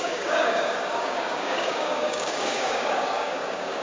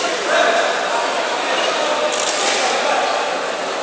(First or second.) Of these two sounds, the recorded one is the second